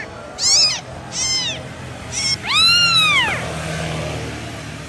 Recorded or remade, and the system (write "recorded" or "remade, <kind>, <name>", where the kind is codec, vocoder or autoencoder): recorded